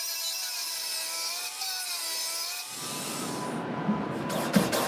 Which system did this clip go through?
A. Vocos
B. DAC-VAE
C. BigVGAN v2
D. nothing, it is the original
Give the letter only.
D